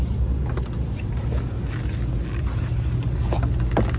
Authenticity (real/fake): real